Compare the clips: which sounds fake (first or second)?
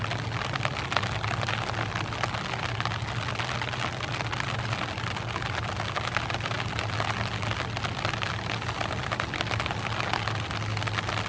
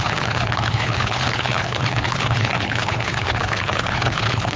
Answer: second